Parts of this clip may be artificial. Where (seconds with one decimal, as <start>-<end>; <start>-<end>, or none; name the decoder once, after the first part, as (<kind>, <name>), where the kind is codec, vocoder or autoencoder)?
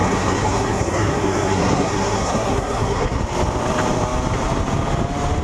0.0-3.2 (codec, SNAC)